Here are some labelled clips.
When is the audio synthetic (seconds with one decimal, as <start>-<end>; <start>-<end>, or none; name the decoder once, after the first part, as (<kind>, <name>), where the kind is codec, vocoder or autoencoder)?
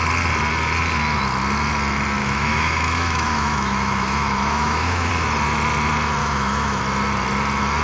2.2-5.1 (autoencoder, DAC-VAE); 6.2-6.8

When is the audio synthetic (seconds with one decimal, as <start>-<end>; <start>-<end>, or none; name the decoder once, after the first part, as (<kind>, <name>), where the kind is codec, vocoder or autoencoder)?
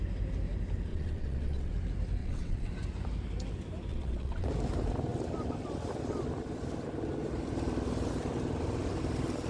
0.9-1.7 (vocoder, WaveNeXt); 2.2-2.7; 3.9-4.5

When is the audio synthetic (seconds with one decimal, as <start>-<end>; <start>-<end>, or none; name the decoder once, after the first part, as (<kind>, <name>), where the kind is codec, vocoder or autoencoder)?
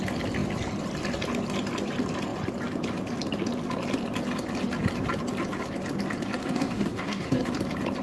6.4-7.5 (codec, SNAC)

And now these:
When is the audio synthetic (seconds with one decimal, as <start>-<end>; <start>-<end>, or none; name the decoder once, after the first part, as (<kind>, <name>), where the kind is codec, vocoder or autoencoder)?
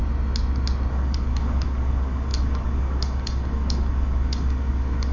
0.9-5.1 (codec, DAC)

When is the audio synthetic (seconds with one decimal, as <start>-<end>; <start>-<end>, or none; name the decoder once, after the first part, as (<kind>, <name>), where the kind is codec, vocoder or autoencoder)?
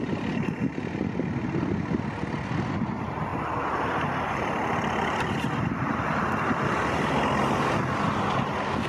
none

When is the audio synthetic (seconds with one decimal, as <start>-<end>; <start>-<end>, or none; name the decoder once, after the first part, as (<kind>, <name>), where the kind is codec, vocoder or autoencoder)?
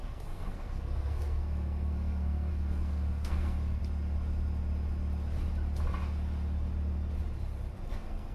0.0-3.8 (codec, SNAC); 7.9-8.3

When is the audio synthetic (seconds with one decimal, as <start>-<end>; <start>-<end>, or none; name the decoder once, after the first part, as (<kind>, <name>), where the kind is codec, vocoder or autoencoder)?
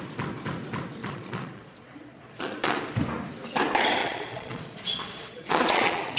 1.0-2.8 (vocoder, Vocos); 4.0-6.2